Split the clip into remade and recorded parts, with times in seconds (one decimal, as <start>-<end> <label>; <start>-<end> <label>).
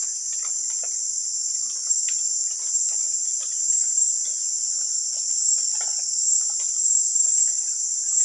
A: 0.0-8.2 recorded